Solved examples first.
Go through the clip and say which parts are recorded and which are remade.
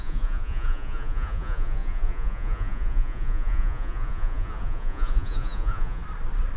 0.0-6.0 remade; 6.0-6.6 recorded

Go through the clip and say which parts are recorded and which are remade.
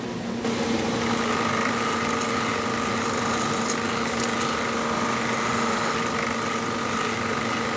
0.0-7.8 recorded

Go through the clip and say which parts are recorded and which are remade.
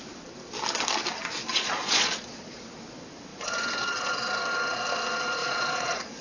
0.0-1.5 recorded; 1.5-2.6 remade; 2.6-3.3 recorded; 3.3-4.4 remade; 4.4-5.4 recorded; 5.4-6.2 remade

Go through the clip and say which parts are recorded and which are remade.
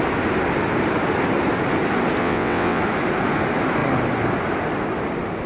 0.0-2.2 recorded; 2.2-2.8 remade; 2.8-5.5 recorded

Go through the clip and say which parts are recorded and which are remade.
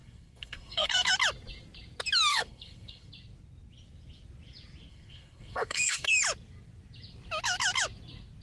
0.0-1.1 remade; 1.1-2.3 recorded; 2.3-3.1 remade; 3.1-4.9 recorded; 4.9-6.2 remade; 6.2-8.4 recorded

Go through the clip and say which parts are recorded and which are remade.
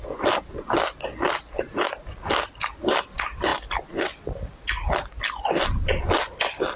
0.0-6.8 recorded